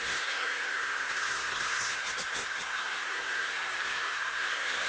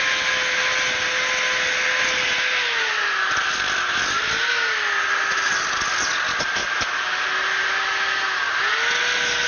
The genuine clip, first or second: second